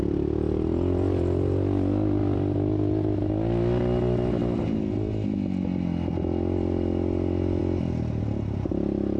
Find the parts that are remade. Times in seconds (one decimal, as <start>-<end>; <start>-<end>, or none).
none